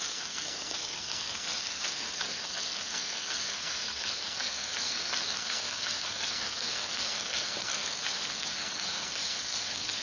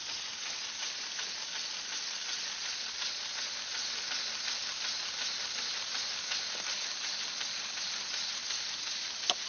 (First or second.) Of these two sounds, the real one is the second